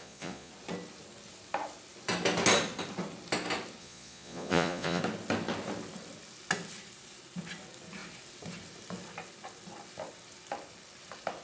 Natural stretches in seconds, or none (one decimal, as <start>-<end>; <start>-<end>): 0.5-3.8; 5.0-11.4